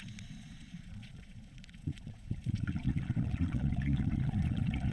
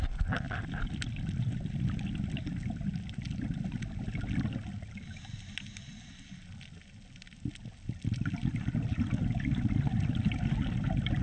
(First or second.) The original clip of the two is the second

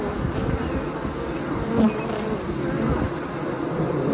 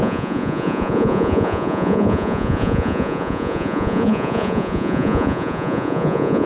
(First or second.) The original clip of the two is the first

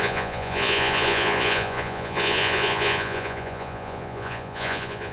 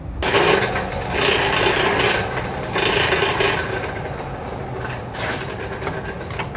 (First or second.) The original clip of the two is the second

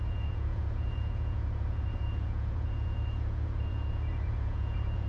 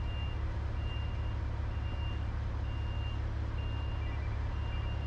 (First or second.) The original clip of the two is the second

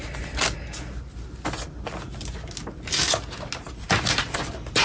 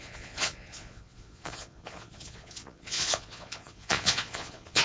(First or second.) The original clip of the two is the first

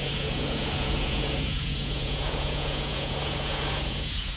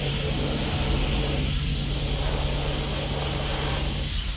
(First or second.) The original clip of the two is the second